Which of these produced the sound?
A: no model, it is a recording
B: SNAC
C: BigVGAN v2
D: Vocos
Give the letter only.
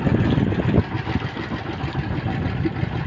A